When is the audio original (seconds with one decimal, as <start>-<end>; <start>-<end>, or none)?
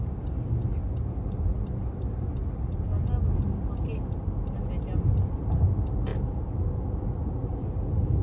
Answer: 0.0-8.2